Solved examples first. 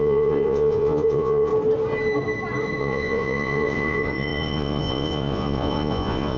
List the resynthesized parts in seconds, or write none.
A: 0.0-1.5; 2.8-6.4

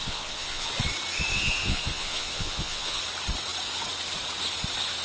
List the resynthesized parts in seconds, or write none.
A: 0.0-0.7; 1.3-3.0

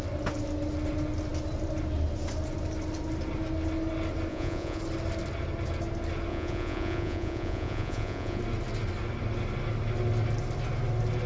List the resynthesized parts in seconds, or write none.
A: 4.3-4.8; 6.3-8.4

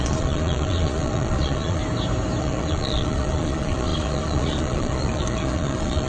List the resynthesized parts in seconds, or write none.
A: 0.0-1.8; 2.4-6.1

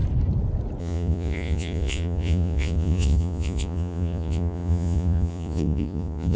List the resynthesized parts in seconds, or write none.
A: 0.8-6.4

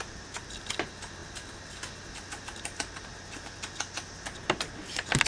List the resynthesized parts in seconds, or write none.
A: none

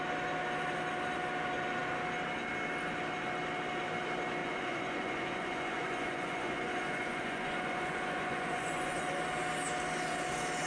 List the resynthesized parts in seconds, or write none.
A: 4.4-9.0